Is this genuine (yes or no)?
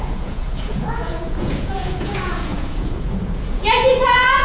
no